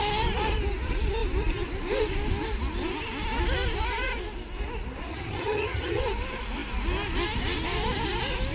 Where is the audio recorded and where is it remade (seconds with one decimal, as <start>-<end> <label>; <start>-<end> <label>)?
0.0-5.1 recorded; 5.1-6.0 remade; 6.0-8.5 recorded

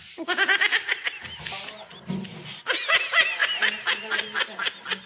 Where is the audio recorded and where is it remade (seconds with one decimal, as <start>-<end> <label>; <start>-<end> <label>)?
0.0-5.1 recorded

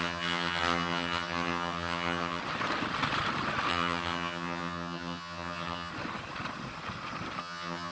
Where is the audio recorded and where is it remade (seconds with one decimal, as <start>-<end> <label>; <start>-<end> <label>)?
0.0-2.4 remade; 2.4-3.7 recorded; 3.7-5.9 remade; 5.9-7.4 recorded; 7.4-7.9 remade

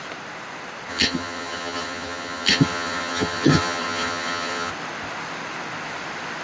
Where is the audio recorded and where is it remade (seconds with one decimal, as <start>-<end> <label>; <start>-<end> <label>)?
0.0-0.9 recorded; 0.9-4.7 remade; 4.7-6.4 recorded

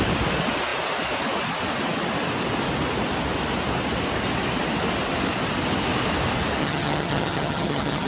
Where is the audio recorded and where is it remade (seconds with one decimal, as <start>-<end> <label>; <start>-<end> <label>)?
0.0-6.6 recorded; 6.6-8.1 remade

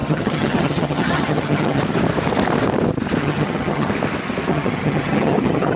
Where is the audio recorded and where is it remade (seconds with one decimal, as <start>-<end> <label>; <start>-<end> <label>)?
0.0-1.8 remade; 1.8-3.2 recorded; 3.2-3.9 remade; 3.9-4.5 recorded; 4.5-5.8 remade

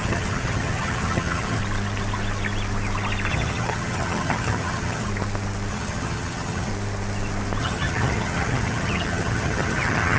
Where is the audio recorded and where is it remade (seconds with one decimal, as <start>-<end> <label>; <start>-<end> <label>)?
0.0-1.6 remade; 1.6-3.3 recorded; 3.3-5.1 remade; 5.1-5.7 recorded; 5.7-6.7 remade; 6.7-7.6 recorded; 7.6-10.2 remade